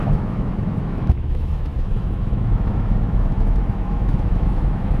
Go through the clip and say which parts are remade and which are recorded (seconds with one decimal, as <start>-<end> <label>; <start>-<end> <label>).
0.0-5.0 remade